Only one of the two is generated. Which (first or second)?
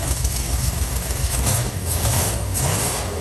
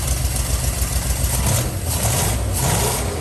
first